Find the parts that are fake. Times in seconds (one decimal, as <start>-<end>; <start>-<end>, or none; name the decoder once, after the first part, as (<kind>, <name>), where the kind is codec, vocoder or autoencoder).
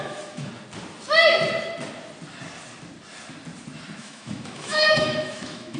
0.0-0.5 (autoencoder, DAC-VAE); 4.0-5.8